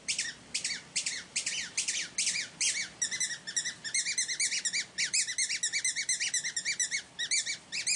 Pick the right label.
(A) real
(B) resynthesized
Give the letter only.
A